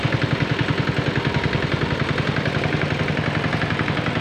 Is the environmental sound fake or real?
real